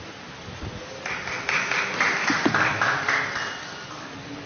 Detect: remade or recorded recorded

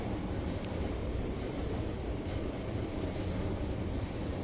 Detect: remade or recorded remade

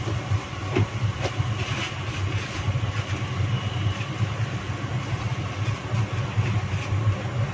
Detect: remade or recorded recorded